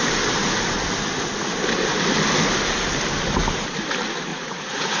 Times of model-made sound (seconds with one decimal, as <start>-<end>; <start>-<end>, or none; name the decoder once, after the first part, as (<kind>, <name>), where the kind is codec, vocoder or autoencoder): 4.3-5.0 (vocoder, Vocos)